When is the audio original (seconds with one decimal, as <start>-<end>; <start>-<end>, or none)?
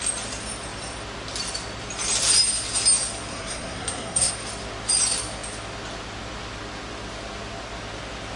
0.0-3.3; 4.3-8.4